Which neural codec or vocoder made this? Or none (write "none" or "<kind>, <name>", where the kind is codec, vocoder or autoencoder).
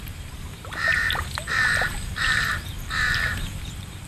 vocoder, BigVGAN v2